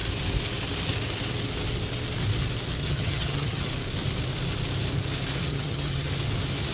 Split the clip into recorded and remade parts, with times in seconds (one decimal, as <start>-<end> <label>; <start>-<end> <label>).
0.0-2.8 recorded; 2.8-3.7 remade; 3.7-5.5 recorded; 5.5-6.1 remade; 6.1-6.7 recorded